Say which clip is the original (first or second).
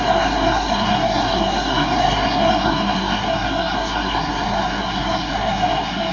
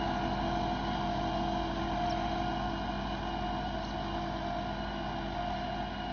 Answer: second